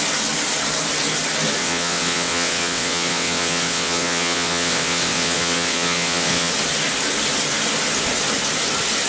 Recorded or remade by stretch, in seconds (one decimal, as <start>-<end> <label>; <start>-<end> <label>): 0.0-1.6 recorded; 1.6-6.5 remade; 6.5-9.1 recorded